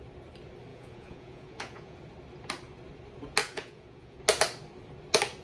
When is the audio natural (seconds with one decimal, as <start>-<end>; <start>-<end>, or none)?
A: 0.0-0.7; 2.0-3.4; 4.2-5.4